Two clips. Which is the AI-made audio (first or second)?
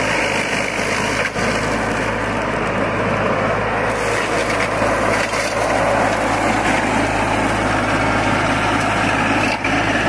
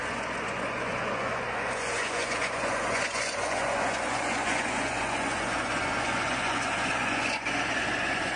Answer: second